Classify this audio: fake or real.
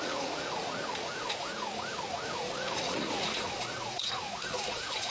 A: fake